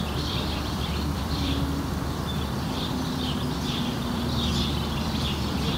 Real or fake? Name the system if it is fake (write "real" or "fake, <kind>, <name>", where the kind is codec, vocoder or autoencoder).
fake, vocoder, BigVGAN v2